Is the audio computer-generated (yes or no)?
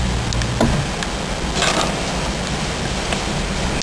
no